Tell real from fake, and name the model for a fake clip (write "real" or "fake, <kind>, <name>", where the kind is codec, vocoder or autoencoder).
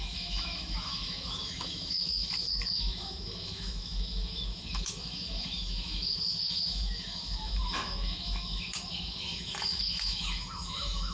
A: fake, autoencoder, DAC-VAE